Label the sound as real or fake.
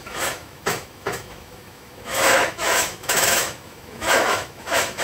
fake